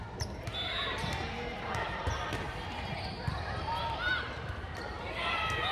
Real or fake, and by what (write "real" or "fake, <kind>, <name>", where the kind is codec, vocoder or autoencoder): real